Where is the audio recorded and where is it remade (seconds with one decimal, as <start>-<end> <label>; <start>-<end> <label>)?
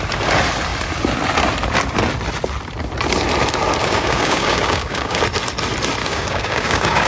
0.0-3.8 recorded; 3.8-5.2 remade; 5.2-6.0 recorded; 6.0-7.1 remade